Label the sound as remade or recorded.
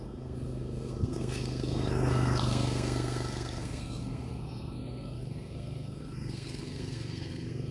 remade